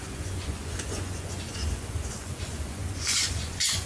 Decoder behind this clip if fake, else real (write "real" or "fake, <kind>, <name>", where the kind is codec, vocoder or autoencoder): fake, vocoder, Vocos